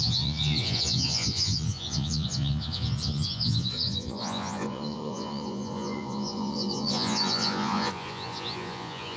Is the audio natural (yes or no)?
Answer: no